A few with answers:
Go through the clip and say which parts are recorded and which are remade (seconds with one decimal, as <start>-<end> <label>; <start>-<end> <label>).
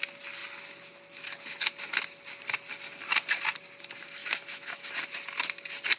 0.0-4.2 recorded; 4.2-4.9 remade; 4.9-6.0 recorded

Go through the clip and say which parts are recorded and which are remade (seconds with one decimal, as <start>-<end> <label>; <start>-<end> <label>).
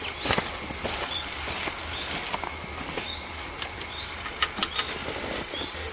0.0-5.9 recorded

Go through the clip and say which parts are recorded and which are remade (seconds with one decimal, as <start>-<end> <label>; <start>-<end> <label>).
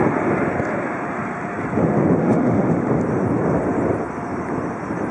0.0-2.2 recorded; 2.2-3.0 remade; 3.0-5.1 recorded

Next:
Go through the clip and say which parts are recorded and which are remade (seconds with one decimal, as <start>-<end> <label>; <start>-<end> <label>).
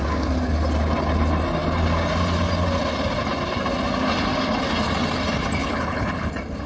0.0-5.6 recorded; 5.6-6.3 remade; 6.3-6.7 recorded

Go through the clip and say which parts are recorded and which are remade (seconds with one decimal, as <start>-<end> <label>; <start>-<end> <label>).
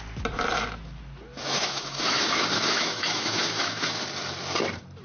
0.0-1.3 recorded; 1.3-4.0 remade; 4.0-5.0 recorded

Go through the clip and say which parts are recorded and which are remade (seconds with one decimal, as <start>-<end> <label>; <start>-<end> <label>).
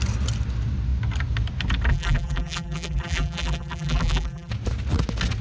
0.0-1.9 recorded; 1.9-4.5 remade; 4.5-5.4 recorded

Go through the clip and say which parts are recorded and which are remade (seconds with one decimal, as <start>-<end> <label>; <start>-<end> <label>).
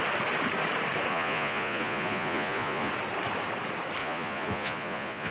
0.0-1.1 recorded; 1.1-2.9 remade; 2.9-4.0 recorded; 4.0-5.3 remade